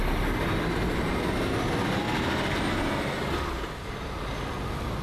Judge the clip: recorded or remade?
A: recorded